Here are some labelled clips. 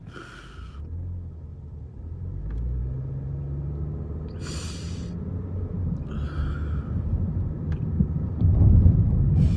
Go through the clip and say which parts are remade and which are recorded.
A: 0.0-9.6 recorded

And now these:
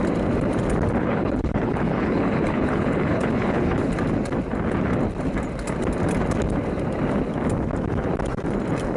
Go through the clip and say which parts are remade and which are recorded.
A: 0.0-1.0 recorded; 1.0-3.9 remade; 3.9-9.0 recorded

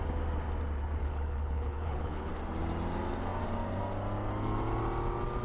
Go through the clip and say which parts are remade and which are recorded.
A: 0.0-1.0 recorded; 1.0-2.3 remade; 2.3-5.4 recorded